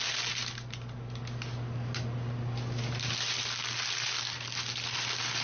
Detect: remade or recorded recorded